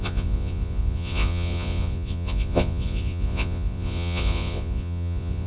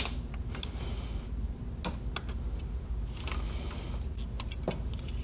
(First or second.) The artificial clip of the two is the first